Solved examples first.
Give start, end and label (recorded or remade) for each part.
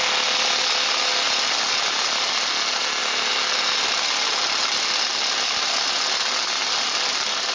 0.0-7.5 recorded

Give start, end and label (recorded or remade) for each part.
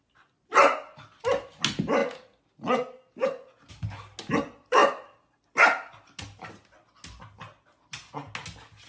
0.0-8.9 recorded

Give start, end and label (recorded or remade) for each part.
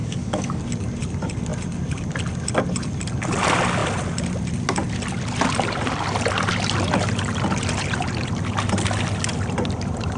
0.0-0.6 remade; 0.6-10.2 recorded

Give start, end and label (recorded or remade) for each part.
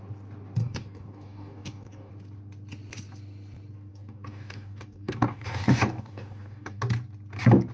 0.0-0.6 recorded; 0.6-2.1 remade; 2.1-3.9 recorded; 3.9-6.8 remade; 6.8-7.7 recorded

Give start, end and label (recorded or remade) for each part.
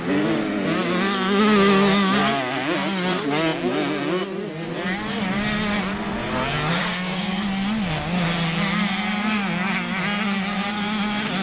0.0-6.7 recorded; 6.7-7.3 remade; 7.3-11.4 recorded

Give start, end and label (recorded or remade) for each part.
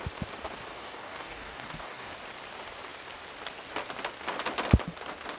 0.0-0.7 recorded; 0.7-2.1 remade; 2.1-5.4 recorded